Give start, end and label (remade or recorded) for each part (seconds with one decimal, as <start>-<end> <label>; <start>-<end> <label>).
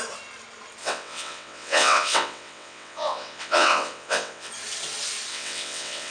0.0-0.8 recorded; 0.8-4.5 remade; 4.5-5.3 recorded; 5.3-6.1 remade